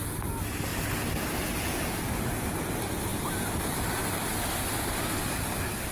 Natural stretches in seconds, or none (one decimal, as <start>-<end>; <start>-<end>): 0.0-5.9